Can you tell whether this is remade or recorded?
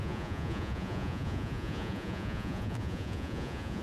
remade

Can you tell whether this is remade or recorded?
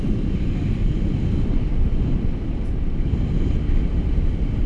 recorded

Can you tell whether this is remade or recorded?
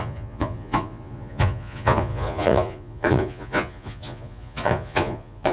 remade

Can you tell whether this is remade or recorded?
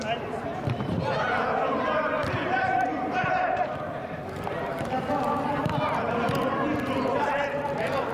recorded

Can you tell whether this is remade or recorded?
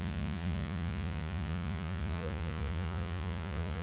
remade